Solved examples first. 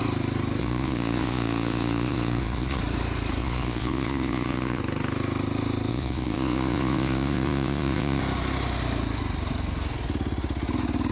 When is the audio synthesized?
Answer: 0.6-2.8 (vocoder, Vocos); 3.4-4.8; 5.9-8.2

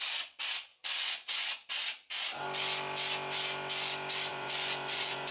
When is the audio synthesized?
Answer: 0.7-1.5 (vocoder, Vocos); 4.3-5.3

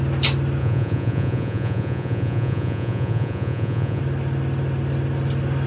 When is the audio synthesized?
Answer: 0.6-4.0 (vocoder, Vocos)

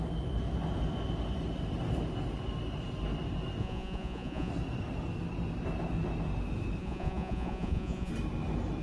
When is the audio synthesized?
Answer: 3.6-4.5 (vocoder, Vocos); 6.8-8.1

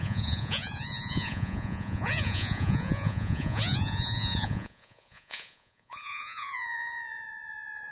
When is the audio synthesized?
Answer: 0.0-7.9 (vocoder, Vocos)

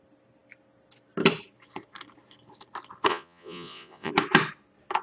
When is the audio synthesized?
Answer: 3.1-4.1 (vocoder, Vocos)

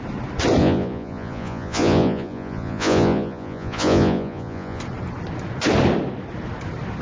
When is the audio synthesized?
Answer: 0.6-4.8 (vocoder, Vocos)